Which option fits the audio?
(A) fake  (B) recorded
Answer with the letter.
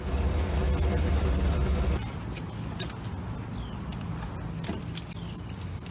B